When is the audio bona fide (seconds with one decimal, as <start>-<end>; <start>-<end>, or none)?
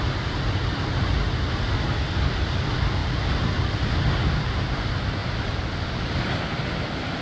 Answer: 0.0-3.0; 3.7-5.2; 6.4-7.2